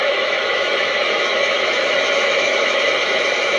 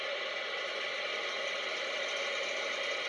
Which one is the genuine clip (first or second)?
second